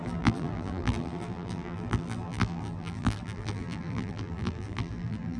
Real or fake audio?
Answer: fake